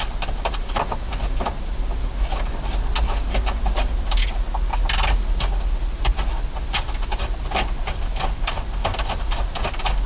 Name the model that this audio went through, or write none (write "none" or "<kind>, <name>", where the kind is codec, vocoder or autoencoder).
none